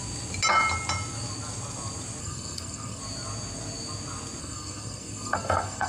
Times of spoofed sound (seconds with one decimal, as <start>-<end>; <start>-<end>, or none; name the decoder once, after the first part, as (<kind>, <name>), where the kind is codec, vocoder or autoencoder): 2.2-3.0 (codec, SNAC); 4.4-5.9